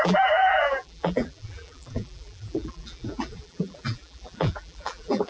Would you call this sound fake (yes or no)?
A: yes